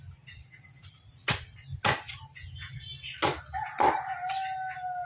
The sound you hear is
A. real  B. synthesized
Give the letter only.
A